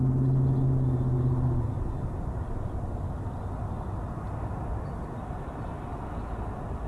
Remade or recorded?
recorded